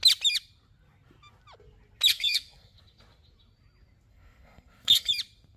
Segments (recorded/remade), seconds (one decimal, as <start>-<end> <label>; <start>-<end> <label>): 0.0-2.1 recorded; 2.1-2.8 remade; 2.8-4.1 recorded; 4.1-5.1 remade; 5.1-5.6 recorded